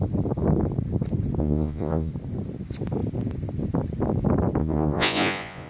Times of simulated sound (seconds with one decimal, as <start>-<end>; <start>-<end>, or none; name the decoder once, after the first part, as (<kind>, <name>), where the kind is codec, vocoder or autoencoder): 1.4-2.1 (vocoder, Vocos); 4.6-5.7